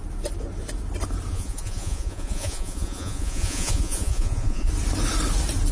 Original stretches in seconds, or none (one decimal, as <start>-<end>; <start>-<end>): 0.0-1.3; 4.7-5.7